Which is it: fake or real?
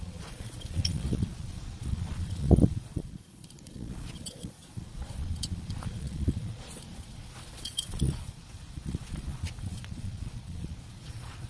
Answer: fake